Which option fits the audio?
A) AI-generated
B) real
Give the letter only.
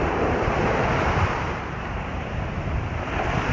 A